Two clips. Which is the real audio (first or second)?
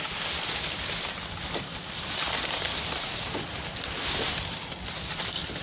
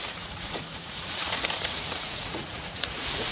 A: first